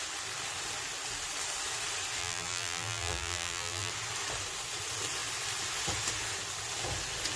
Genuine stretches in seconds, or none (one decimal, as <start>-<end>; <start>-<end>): 0.0-2.2; 3.9-7.4